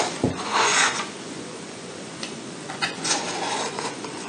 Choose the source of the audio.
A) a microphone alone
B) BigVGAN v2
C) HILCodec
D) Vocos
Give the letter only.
D